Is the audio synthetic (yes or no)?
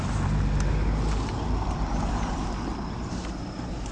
no